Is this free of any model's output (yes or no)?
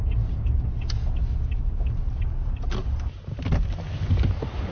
yes